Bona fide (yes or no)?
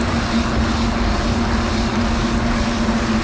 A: yes